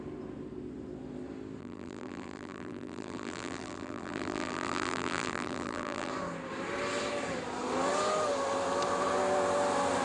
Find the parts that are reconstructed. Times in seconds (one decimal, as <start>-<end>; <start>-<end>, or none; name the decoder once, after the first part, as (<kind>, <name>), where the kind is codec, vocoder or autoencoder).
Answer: 1.6-6.1 (vocoder, BigVGAN v2)